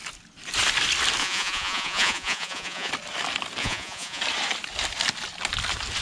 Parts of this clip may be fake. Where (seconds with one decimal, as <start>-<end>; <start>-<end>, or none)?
1.2-2.9; 3.6-4.2